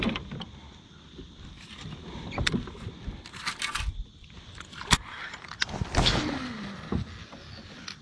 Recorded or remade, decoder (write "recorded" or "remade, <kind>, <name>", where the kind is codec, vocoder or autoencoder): recorded